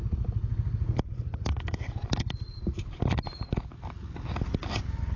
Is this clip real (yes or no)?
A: yes